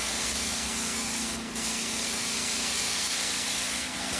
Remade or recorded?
remade